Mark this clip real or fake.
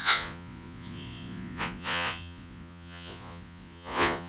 fake